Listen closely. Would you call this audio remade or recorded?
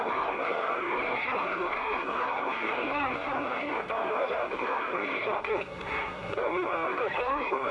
remade